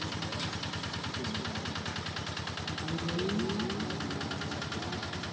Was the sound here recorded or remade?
recorded